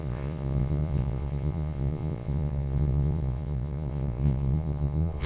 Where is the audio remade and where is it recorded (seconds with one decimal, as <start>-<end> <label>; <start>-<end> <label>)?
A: 0.0-5.3 remade